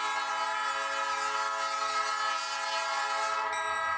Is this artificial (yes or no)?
no